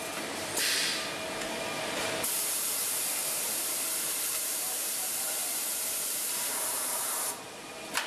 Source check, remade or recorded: remade